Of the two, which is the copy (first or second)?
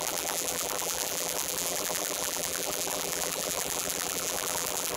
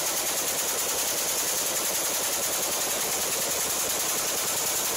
first